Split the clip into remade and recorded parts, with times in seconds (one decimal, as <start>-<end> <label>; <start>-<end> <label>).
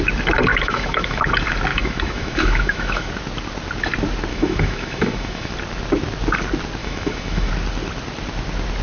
0.0-0.5 recorded; 0.5-1.2 remade; 1.2-1.7 recorded; 1.7-3.1 remade; 3.1-4.3 recorded; 4.3-5.5 remade; 5.5-6.8 recorded; 6.8-7.5 remade; 7.5-8.8 recorded